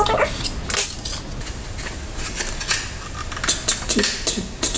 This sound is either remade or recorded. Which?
recorded